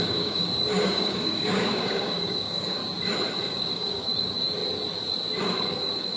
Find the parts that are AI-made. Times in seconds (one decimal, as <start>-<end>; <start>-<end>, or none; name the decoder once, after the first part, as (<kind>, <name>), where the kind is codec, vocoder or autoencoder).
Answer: 0.0-2.8 (codec, DAC); 3.4-4.6; 5.4-6.2